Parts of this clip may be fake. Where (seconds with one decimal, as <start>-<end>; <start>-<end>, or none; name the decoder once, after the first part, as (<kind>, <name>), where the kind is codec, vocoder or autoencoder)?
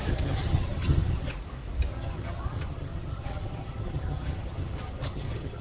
0.0-1.3 (vocoder, HiFi-GAN); 1.9-5.6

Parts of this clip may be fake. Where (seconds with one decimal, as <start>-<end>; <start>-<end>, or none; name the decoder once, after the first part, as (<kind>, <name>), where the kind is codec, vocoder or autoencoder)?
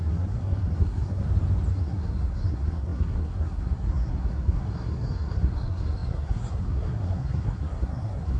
0.0-1.2 (codec, SNAC); 1.7-8.4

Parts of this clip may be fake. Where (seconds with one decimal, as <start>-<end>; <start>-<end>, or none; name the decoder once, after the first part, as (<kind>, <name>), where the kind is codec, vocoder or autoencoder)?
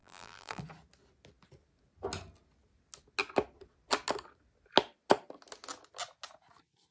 0.0-0.6 (vocoder, BigVGAN v2)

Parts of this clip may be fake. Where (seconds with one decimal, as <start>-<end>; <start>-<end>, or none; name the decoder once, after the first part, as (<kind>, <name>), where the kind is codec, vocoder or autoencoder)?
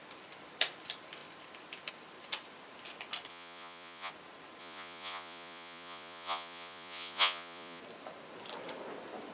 3.3-4.1 (vocoder, Vocos); 4.6-7.8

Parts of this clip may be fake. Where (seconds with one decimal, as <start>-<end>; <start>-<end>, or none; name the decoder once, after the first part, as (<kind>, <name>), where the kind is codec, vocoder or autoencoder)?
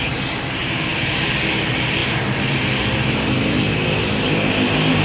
0.0-5.0 (vocoder, BigVGAN v2)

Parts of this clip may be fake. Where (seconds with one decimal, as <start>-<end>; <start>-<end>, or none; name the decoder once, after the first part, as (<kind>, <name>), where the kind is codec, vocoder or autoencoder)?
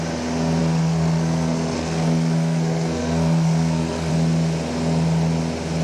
0.6-4.1 (codec, SNAC)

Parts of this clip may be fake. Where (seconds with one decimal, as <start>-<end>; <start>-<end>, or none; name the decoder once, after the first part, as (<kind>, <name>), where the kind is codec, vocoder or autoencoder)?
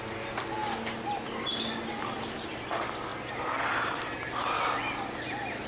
none